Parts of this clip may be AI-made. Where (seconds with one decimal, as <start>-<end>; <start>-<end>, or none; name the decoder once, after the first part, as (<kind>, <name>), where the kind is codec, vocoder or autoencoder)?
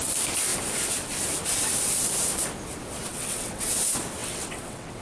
3.1-3.7 (vocoder, WaveNeXt); 4.2-5.0